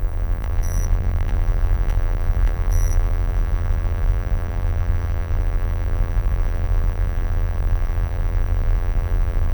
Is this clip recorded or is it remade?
remade